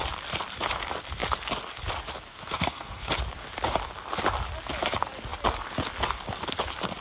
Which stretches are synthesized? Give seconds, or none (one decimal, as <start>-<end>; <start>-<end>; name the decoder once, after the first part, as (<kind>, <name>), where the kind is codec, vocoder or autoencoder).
2.3-3.1 (codec, SNAC)